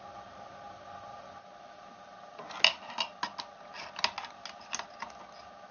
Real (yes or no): yes